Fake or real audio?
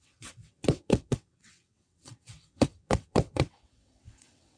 fake